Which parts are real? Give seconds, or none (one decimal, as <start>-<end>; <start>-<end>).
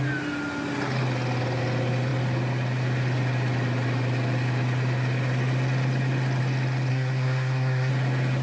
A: 0.0-6.9; 7.9-8.4